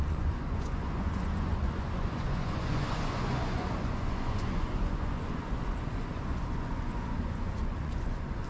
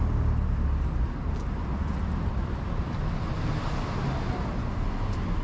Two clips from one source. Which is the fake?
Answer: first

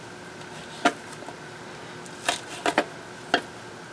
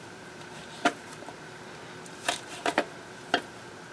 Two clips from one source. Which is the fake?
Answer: second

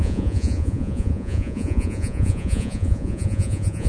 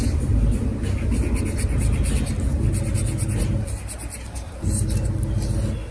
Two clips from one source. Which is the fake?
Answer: first